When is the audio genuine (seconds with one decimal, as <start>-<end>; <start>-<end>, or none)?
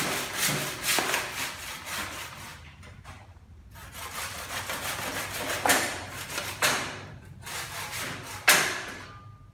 0.0-2.5; 3.9-5.7; 8.4-9.5